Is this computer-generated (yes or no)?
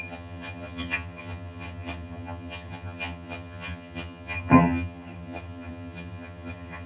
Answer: yes